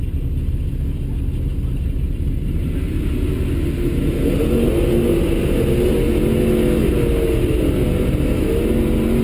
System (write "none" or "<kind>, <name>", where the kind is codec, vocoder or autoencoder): none